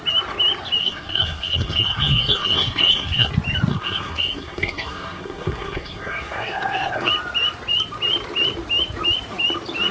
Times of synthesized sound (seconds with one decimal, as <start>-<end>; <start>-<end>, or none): 0.8-3.3; 3.7-7.1